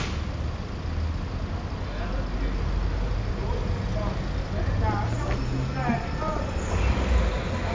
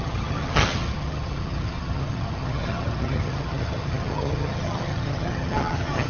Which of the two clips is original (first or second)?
first